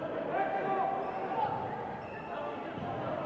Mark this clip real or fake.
real